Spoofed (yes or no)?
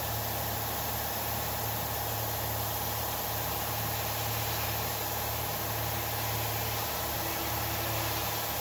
no